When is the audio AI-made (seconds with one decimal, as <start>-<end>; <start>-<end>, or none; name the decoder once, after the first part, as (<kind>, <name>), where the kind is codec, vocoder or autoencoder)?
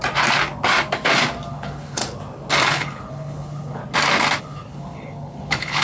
1.5-2.0 (codec, HILCodec); 2.7-3.8; 4.4-5.8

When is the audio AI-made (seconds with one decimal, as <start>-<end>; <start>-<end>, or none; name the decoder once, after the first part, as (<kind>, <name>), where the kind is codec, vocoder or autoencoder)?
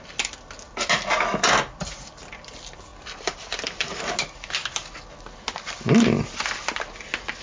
2.9-4.0 (vocoder, BigVGAN v2)